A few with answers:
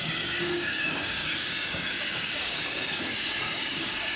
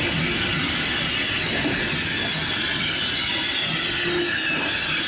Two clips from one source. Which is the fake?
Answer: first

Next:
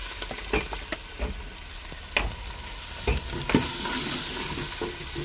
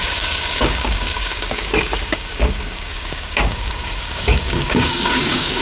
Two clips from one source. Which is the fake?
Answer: second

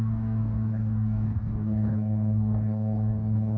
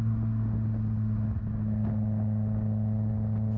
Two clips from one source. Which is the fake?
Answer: first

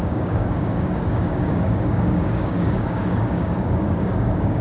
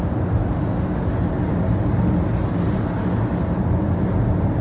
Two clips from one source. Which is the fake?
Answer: first